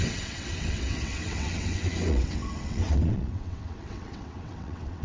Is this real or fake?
fake